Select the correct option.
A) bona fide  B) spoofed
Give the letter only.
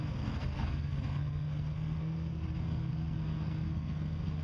B